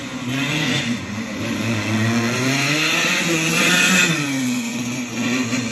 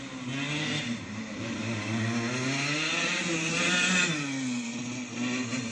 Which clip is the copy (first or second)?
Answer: first